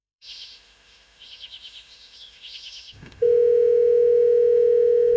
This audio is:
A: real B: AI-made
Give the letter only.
B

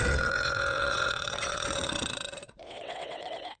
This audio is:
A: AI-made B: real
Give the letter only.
A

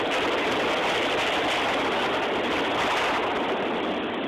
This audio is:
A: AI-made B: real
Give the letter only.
B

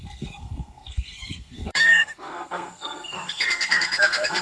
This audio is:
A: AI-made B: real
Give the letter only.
A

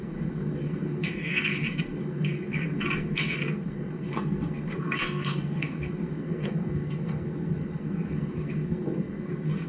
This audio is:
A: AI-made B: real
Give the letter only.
A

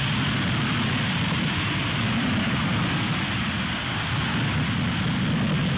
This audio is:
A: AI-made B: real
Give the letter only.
B